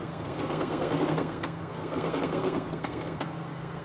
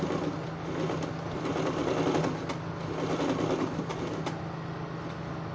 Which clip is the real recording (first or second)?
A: second